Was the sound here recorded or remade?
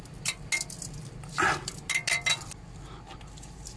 recorded